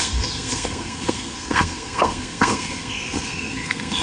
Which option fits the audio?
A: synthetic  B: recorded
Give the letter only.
A